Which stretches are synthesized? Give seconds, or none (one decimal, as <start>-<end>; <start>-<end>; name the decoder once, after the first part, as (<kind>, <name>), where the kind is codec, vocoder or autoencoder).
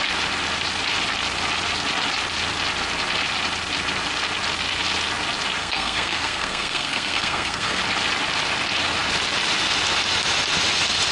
5.6-7.8 (codec, SNAC)